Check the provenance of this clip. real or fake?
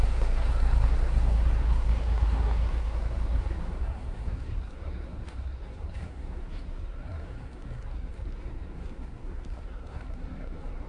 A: fake